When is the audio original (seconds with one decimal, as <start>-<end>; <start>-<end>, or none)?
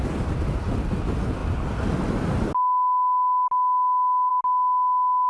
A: 0.0-5.3